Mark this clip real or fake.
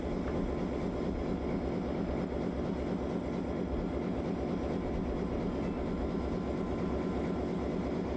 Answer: real